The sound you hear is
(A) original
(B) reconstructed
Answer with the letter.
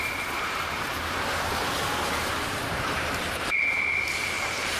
B